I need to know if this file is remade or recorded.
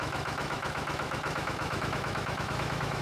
remade